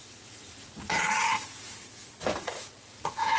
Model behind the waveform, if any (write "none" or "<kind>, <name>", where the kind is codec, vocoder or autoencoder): vocoder, Vocos